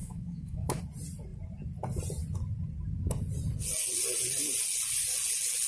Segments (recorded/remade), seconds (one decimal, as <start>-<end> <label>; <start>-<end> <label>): 0.0-0.8 remade; 0.8-5.7 recorded